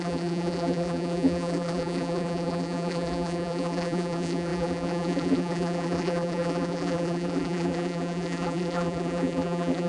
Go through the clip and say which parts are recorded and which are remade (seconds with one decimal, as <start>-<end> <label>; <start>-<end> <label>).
0.0-9.9 remade